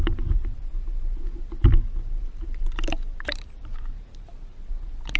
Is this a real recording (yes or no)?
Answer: no